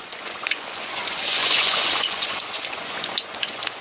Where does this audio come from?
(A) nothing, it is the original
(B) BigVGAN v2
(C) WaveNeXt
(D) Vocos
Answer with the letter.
D